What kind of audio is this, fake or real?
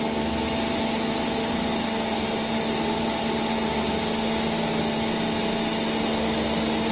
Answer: real